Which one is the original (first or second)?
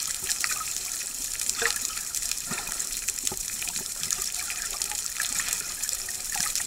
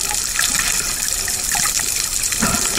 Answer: second